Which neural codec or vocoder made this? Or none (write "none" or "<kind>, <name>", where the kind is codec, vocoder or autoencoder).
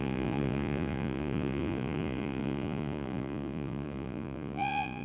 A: vocoder, Vocos